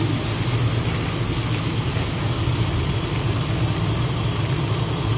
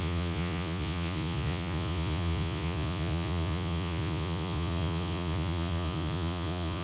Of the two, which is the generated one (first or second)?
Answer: second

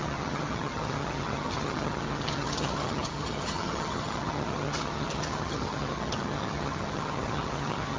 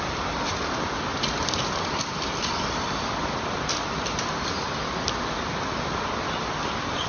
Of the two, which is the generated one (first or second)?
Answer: first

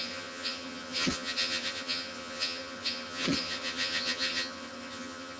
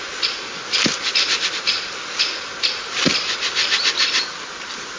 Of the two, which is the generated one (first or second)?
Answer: first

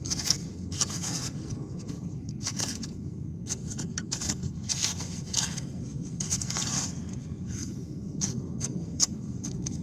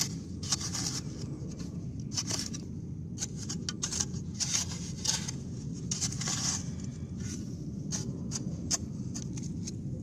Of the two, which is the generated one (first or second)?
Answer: first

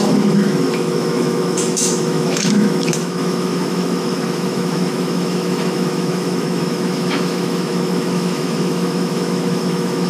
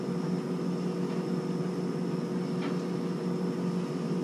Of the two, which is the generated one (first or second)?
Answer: first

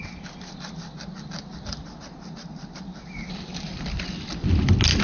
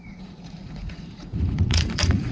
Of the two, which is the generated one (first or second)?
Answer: second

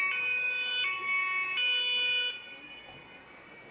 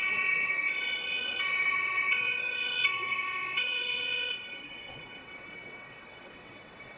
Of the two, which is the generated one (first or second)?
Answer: second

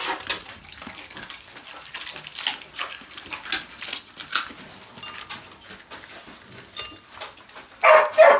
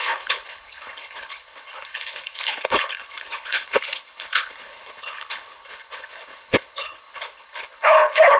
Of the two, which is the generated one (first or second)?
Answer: second